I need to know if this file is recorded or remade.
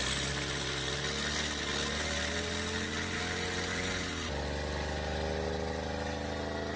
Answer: recorded